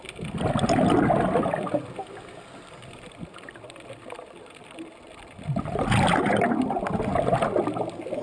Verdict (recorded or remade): recorded